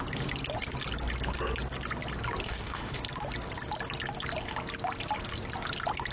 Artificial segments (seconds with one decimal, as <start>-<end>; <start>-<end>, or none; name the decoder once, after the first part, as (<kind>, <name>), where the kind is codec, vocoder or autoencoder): 2.4-3.0 (autoencoder, DAC-VAE)